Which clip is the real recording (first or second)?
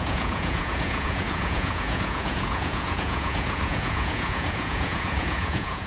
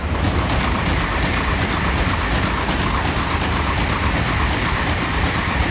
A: second